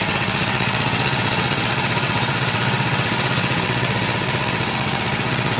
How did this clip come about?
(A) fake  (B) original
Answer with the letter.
A